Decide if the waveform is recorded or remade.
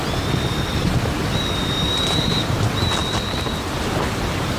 recorded